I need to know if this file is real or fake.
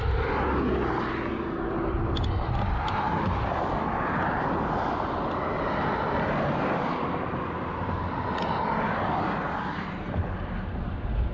real